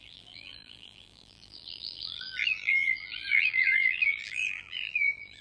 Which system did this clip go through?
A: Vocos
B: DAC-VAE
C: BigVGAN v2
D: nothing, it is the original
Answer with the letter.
C